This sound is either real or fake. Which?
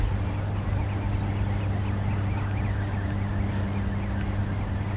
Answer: real